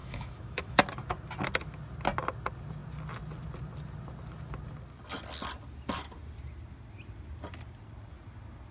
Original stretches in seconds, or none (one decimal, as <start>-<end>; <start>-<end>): 0.8-8.7